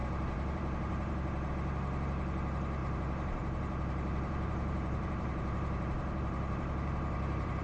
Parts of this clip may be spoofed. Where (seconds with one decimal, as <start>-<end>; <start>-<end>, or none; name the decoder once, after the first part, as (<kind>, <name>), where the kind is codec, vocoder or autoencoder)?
0.0-1.5 (vocoder, BigVGAN v2); 2.8-7.6